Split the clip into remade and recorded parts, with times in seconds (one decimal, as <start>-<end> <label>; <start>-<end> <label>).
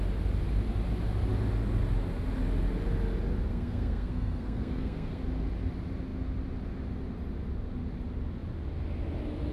0.0-3.5 recorded; 3.5-5.2 remade; 5.2-9.5 recorded